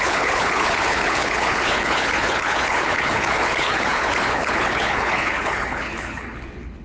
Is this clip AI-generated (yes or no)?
yes